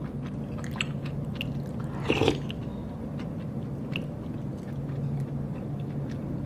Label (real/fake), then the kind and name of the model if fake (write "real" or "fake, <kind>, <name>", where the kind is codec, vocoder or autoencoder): real